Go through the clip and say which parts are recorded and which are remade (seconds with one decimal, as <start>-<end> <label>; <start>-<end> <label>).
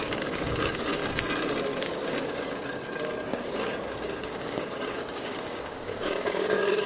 0.0-1.0 remade; 1.0-1.8 recorded; 1.8-2.8 remade; 2.8-3.4 recorded; 3.4-6.9 remade